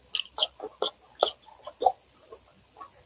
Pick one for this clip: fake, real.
real